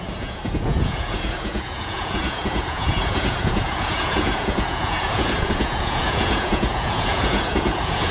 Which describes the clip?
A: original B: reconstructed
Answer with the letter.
B